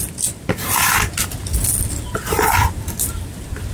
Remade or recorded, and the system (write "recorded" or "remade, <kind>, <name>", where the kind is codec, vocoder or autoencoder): recorded